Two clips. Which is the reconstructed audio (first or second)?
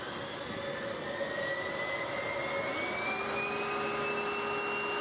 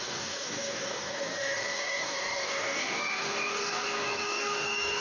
second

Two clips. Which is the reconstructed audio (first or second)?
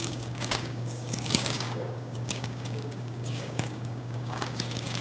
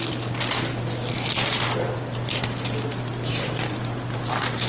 first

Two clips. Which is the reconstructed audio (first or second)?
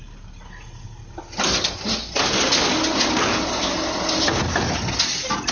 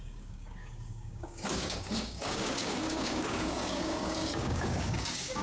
second